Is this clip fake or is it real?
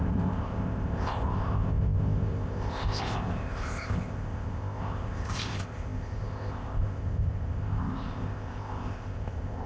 fake